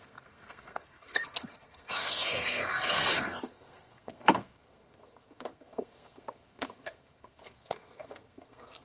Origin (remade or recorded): remade